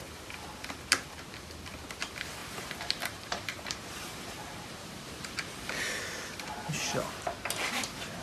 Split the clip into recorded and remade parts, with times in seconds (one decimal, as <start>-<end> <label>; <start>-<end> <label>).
0.0-2.4 recorded; 2.4-5.7 remade; 5.7-8.2 recorded